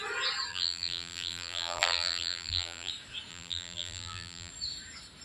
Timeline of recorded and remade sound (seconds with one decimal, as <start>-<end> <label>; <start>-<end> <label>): 0.0-0.5 recorded; 0.5-2.9 remade; 2.9-3.3 recorded; 3.3-4.5 remade; 4.5-5.2 recorded